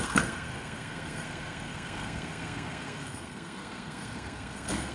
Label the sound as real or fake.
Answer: fake